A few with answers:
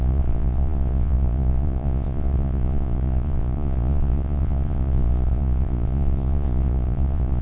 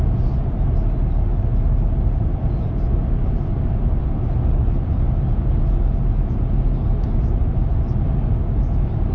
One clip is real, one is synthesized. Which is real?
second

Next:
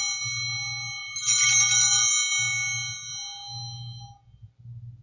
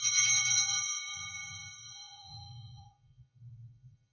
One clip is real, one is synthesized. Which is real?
first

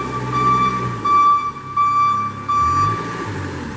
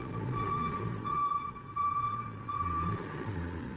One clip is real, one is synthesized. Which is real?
first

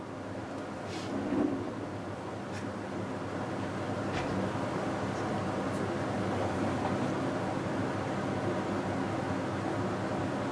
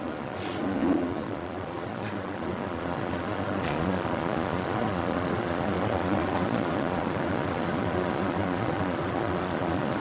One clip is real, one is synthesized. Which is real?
first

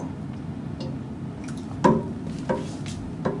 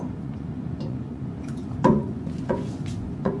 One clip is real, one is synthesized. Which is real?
first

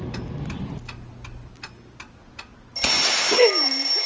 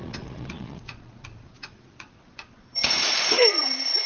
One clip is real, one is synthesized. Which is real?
first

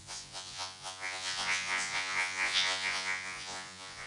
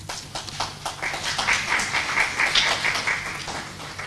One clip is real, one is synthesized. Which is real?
second